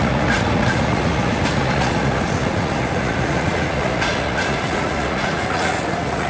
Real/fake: fake